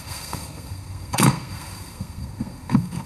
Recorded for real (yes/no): no